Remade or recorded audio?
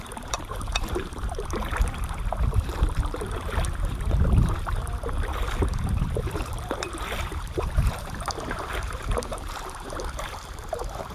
remade